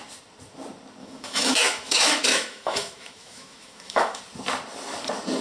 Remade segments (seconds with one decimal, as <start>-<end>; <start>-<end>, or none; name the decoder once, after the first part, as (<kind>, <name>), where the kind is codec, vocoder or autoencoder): 1.0-4.2 (autoencoder, DAC-VAE)